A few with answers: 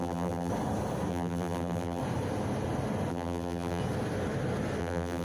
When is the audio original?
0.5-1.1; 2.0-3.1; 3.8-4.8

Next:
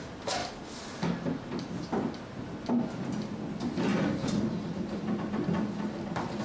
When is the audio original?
0.0-3.9

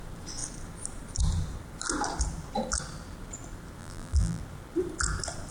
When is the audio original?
0.0-3.8; 4.4-5.5

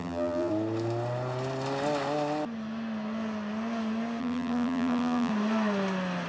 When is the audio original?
0.5-4.2; 5.3-6.3